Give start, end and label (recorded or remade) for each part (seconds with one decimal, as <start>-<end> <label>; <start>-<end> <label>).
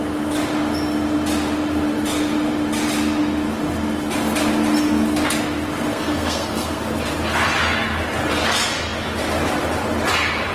0.0-5.9 recorded; 5.9-6.8 remade; 6.8-10.5 recorded